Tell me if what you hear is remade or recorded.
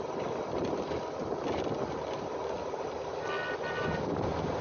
recorded